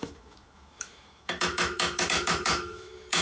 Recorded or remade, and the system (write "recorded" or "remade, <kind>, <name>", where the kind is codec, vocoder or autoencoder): remade, autoencoder, DAC-VAE